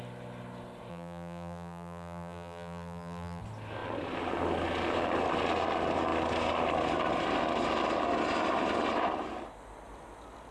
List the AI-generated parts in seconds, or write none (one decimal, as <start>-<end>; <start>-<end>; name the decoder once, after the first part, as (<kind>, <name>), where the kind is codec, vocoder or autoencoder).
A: 0.9-3.4 (vocoder, BigVGAN v2)